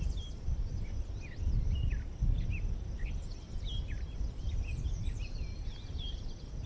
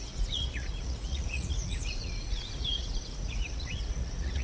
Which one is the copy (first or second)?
second